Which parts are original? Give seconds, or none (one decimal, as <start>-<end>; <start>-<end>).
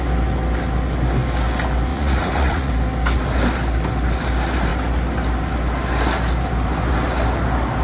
0.0-1.9; 2.7-7.8